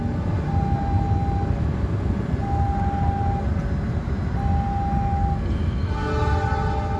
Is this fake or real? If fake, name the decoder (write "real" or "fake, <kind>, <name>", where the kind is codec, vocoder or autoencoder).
real